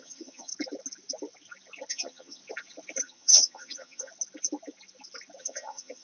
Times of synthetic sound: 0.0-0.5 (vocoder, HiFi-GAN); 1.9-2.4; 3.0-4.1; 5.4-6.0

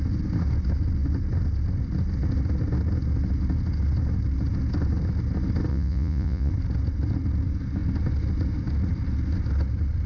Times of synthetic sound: 5.7-6.5 (vocoder, Vocos)